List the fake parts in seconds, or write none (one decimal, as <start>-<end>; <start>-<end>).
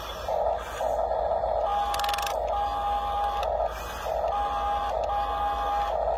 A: none